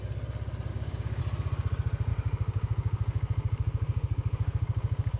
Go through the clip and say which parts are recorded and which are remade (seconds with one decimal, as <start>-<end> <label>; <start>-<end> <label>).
0.0-0.7 recorded; 0.7-1.2 remade; 1.2-2.1 recorded; 2.1-5.2 remade